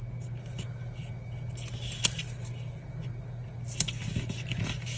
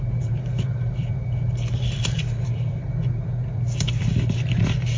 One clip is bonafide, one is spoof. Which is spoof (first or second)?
second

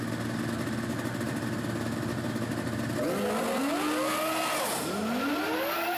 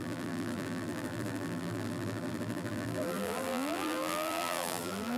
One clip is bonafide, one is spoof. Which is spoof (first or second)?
second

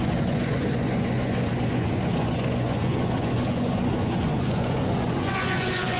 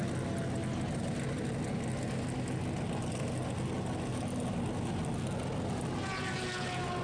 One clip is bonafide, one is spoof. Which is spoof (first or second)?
first